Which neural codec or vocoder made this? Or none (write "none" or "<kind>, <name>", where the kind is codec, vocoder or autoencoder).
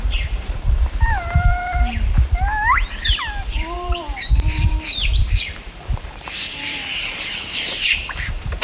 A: vocoder, BigVGAN v2